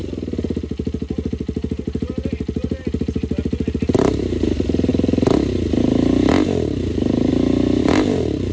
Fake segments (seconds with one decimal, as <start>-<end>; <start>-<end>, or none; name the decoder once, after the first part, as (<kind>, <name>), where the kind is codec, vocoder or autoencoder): 4.0-4.9 (vocoder, BigVGAN v2); 5.8-7.3; 7.8-8.5